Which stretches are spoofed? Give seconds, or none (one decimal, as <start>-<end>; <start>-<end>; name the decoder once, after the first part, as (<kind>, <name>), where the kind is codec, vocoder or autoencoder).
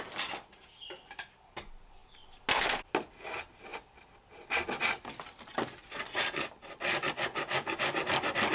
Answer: none